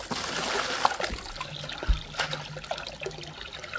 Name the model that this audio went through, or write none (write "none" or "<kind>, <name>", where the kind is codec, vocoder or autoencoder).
none